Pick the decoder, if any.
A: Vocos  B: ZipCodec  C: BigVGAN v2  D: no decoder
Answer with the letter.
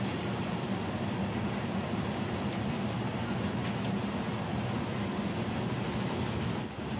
D